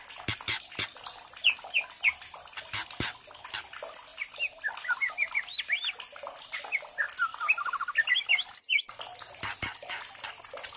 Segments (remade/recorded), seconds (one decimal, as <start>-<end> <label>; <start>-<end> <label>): 0.0-10.8 recorded